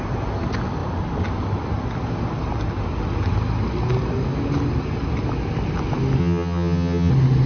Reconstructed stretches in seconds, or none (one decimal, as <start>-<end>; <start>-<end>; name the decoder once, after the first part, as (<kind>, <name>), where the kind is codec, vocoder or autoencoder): 6.2-7.1 (vocoder, HiFi-GAN)